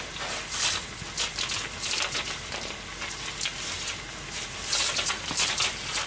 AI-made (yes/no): no